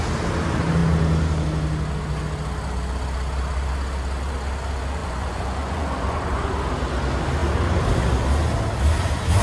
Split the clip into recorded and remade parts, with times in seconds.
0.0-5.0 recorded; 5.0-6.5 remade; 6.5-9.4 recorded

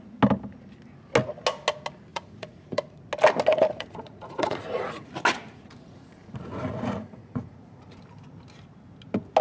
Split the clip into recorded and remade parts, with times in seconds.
0.0-2.1 recorded; 2.1-3.0 remade; 3.0-3.5 recorded; 3.5-5.1 remade; 5.1-5.5 recorded; 5.5-8.0 remade; 8.0-9.4 recorded

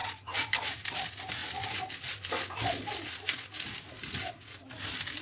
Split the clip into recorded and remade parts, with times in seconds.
0.0-5.2 recorded

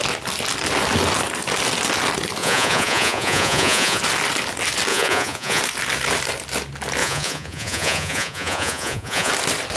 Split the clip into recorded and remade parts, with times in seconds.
0.0-2.4 recorded; 2.4-4.0 remade; 4.0-4.9 recorded; 4.9-5.6 remade; 5.6-7.0 recorded; 7.0-9.3 remade; 9.3-9.8 recorded